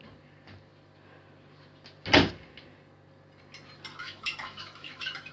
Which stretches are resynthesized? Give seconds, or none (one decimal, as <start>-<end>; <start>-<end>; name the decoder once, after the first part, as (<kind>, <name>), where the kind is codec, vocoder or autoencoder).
4.0-5.3 (autoencoder, DAC-VAE)